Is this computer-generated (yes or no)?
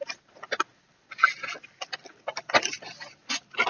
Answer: no